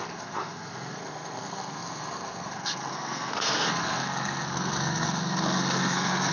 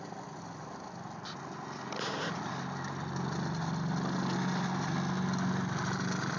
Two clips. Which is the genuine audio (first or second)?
second